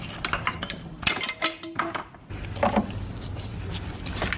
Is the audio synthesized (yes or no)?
no